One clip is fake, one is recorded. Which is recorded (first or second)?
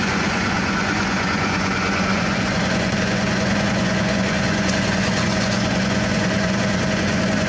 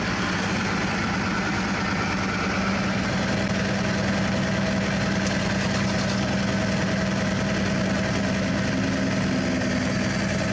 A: second